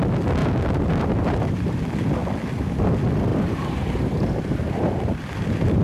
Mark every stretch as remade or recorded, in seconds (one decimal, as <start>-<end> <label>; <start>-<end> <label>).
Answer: 0.0-0.4 recorded; 0.4-1.8 remade; 1.8-3.3 recorded; 3.3-5.8 remade